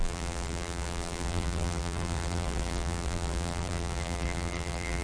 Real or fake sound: fake